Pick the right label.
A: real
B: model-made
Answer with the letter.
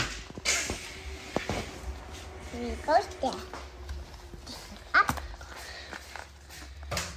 A